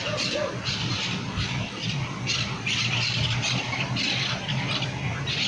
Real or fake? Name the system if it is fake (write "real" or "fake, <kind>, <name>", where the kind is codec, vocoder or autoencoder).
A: real